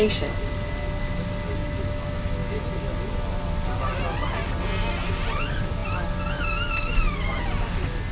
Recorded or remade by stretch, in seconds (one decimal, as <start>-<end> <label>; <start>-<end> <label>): 0.0-8.1 recorded